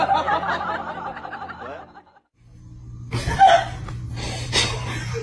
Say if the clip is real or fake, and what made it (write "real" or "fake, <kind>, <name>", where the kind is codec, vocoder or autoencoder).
real